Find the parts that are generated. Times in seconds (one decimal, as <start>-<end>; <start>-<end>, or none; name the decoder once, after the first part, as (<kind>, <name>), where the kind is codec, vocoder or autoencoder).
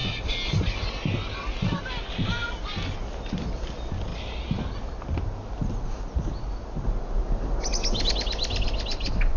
none